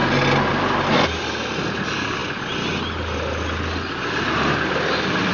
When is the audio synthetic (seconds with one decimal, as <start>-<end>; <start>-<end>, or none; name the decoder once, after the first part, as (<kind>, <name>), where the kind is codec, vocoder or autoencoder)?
none